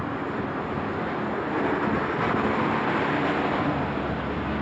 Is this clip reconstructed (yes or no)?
no